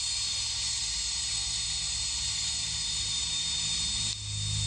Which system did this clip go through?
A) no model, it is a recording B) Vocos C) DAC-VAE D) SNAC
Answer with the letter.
A